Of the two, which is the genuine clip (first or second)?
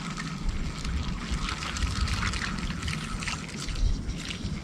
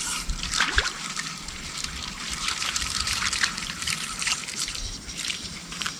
first